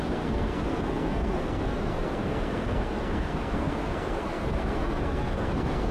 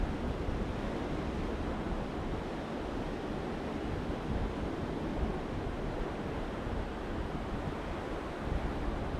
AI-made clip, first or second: first